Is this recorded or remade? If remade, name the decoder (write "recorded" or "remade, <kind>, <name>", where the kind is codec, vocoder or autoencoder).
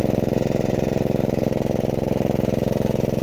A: remade, vocoder, BigVGAN v2